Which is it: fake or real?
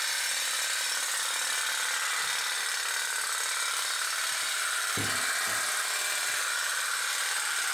real